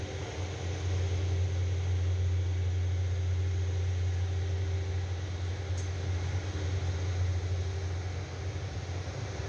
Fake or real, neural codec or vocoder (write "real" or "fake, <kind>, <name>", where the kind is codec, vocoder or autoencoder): real